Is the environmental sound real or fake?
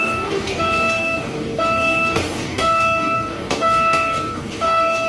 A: fake